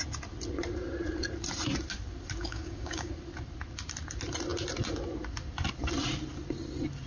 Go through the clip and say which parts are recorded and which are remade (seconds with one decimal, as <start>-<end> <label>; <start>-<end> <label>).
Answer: 0.0-2.4 recorded; 2.4-3.1 remade; 3.1-7.1 recorded